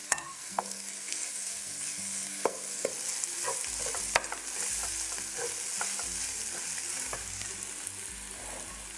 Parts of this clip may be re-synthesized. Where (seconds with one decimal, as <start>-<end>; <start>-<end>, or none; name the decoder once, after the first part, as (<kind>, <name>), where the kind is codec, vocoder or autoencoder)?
0.0-2.9 (codec, SNAC)